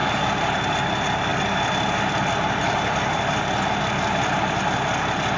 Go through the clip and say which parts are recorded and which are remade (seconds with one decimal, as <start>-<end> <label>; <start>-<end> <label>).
0.0-5.4 recorded